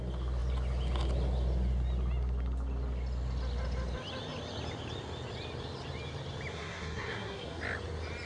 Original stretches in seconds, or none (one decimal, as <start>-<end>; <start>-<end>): 0.0-6.5; 7.6-8.3